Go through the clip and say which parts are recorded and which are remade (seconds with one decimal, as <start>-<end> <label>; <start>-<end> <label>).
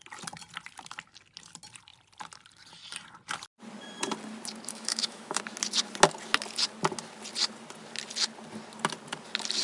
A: 0.0-4.7 recorded; 4.7-5.4 remade; 5.4-9.6 recorded